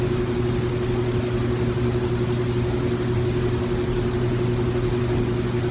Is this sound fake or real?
real